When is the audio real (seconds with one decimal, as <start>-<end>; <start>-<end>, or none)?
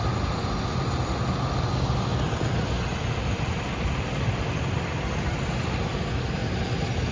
0.0-2.1; 5.4-6.4